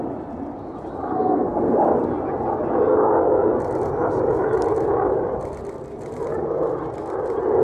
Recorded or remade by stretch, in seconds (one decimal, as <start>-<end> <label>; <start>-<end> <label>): 0.0-1.1 recorded; 1.1-1.8 remade; 1.8-7.6 recorded